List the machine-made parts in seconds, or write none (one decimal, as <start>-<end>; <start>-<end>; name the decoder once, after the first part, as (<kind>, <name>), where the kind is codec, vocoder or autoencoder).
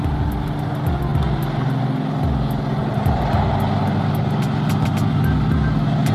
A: 2.8-3.5 (vocoder, BigVGAN v2)